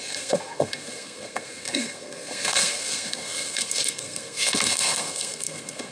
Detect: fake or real fake